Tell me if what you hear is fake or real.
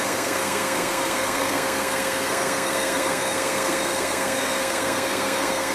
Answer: fake